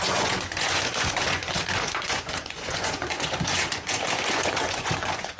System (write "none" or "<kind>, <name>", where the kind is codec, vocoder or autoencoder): vocoder, Vocos